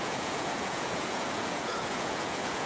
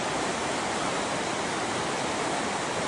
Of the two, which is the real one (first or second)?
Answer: second